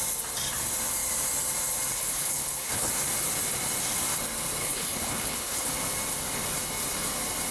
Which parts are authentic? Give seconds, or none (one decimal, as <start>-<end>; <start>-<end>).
0.0-1.9; 2.9-4.6; 5.7-7.5